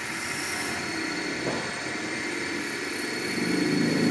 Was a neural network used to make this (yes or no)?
no